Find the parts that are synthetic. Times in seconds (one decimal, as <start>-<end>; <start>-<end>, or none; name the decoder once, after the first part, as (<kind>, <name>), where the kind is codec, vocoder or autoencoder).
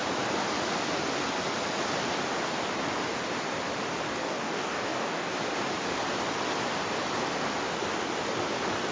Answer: 4.2-5.3 (codec, DAC)